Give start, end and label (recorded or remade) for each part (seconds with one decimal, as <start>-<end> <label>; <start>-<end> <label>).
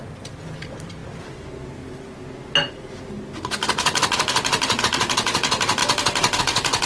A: 0.0-6.9 recorded